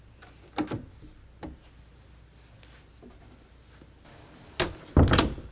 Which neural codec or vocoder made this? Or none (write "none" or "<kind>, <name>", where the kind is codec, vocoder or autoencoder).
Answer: none